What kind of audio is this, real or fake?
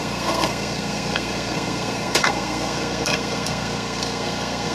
fake